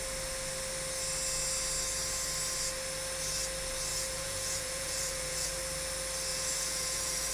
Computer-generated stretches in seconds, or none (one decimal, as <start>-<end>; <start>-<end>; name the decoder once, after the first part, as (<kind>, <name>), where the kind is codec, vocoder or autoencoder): 3.9-5.5 (vocoder, Vocos); 6.3-7.3